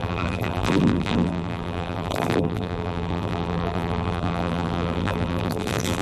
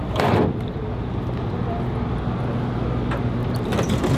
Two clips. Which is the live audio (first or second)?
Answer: second